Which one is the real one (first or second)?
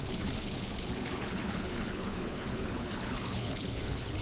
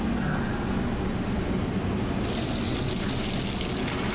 second